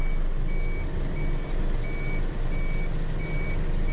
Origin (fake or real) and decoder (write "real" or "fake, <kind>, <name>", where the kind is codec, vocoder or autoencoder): real